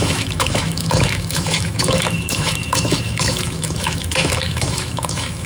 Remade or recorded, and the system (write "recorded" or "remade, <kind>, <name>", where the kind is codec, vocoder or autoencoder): remade, autoencoder, DAC-VAE